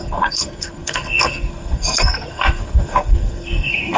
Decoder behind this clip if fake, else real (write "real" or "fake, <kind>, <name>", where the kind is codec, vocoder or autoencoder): fake, codec, SNAC